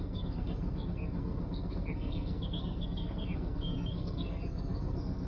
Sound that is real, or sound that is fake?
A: fake